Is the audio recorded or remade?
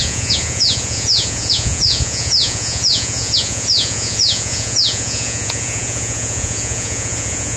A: remade